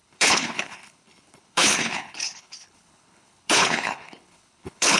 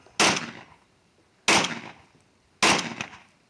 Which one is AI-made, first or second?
first